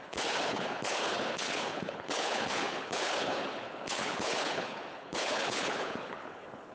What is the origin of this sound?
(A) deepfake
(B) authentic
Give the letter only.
A